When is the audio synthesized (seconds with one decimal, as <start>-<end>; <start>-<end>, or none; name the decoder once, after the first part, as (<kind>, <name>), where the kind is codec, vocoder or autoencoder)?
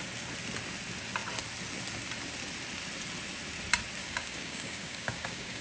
4.0-5.6 (codec, DAC)